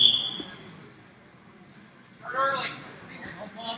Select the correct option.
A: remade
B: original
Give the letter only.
B